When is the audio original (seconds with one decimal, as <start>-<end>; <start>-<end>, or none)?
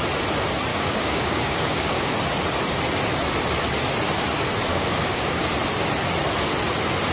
0.0-0.7; 2.1-4.7; 5.4-7.1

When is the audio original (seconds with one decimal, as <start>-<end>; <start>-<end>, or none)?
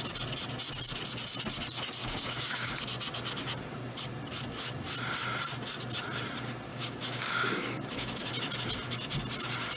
0.0-2.0; 2.7-6.7; 8.3-9.8